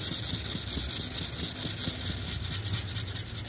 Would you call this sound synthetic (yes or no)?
no